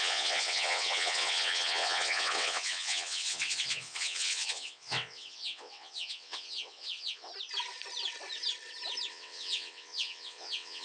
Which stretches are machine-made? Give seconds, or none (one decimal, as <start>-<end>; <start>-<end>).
0.0-7.3; 9.1-10.8